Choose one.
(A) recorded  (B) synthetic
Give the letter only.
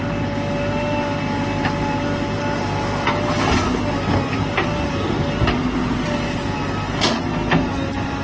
A